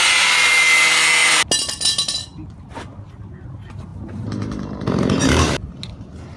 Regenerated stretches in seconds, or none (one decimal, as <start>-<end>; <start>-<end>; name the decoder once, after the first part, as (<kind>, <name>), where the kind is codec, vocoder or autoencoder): none